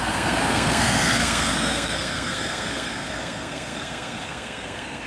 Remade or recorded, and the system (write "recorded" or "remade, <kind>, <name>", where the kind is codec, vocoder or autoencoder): remade, codec, SNAC